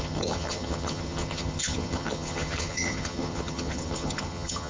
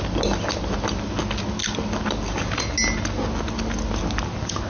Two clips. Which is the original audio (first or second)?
second